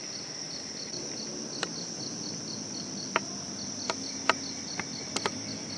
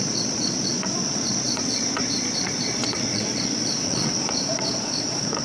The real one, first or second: first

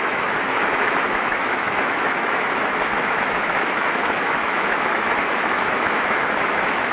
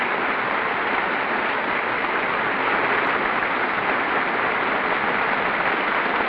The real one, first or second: second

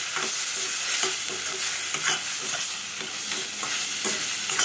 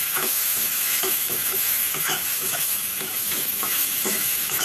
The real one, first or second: first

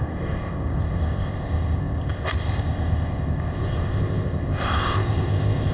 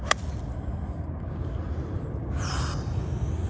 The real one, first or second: second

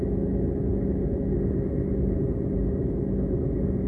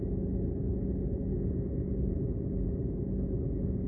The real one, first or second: first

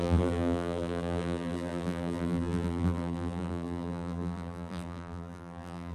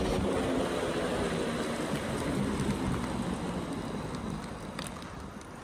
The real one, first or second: second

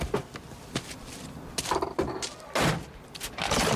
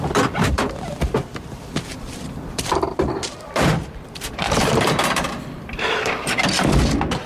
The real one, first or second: first